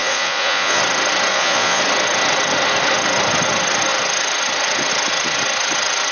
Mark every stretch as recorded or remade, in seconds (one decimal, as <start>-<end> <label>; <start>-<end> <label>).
0.0-0.8 remade; 0.8-1.3 recorded; 1.3-1.8 remade; 1.8-6.1 recorded